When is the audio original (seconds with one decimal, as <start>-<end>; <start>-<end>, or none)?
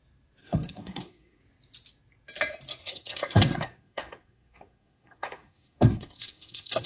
0.0-0.4; 1.4-2.8